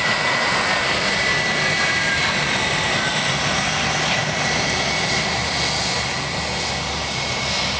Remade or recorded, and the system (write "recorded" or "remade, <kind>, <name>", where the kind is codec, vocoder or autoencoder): recorded